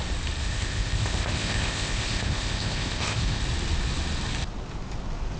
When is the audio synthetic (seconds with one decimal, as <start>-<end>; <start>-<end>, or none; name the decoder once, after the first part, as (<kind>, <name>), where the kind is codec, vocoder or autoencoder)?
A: 0.4-3.4 (codec, ZipCodec)